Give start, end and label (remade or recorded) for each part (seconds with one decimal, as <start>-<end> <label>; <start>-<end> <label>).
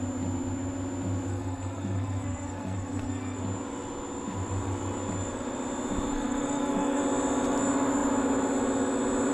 0.0-1.3 recorded; 1.3-3.4 remade; 3.4-6.1 recorded; 6.1-7.0 remade; 7.0-9.3 recorded